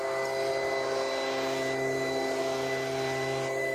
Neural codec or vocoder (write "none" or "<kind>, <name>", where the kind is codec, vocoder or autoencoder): none